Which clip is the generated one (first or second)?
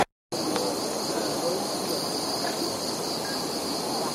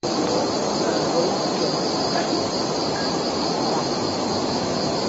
second